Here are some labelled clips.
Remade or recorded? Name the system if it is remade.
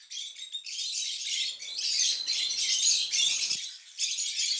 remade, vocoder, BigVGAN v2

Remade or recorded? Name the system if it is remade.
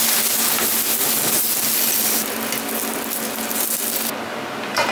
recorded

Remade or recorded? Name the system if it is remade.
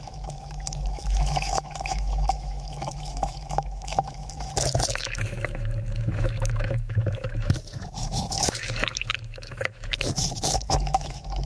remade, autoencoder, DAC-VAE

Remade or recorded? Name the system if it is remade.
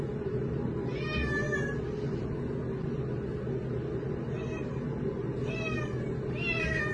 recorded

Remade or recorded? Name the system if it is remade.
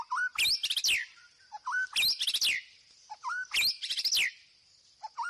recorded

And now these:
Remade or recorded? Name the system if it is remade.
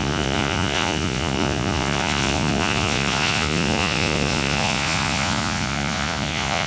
remade, vocoder, Vocos